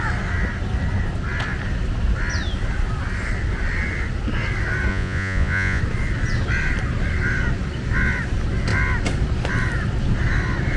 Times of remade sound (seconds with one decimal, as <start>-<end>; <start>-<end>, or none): 4.9-5.8